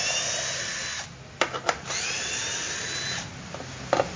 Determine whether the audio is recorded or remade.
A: recorded